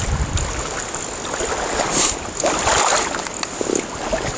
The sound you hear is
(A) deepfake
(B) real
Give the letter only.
B